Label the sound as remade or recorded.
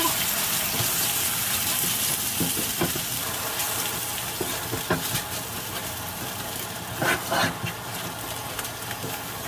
recorded